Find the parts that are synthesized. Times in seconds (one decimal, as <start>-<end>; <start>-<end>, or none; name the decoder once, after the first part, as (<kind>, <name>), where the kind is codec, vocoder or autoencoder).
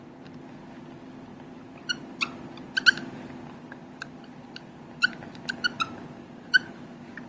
none